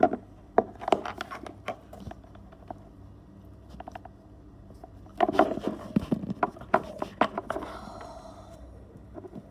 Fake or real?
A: real